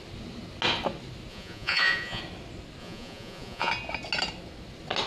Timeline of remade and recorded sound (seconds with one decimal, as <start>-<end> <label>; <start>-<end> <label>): 0.0-1.3 recorded; 1.3-2.2 remade; 2.2-2.8 recorded; 2.8-3.7 remade; 3.7-5.1 recorded